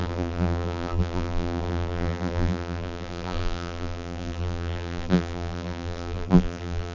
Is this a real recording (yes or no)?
no